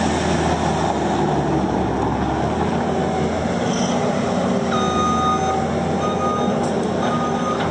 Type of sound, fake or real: real